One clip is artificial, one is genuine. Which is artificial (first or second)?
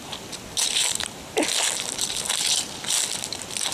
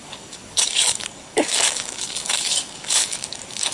second